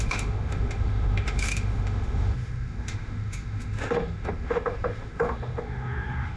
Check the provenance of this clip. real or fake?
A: fake